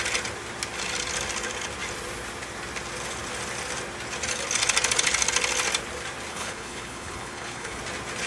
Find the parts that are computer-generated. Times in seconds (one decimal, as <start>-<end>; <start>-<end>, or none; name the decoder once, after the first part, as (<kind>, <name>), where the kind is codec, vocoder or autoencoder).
6.3-7.8 (codec, HILCodec)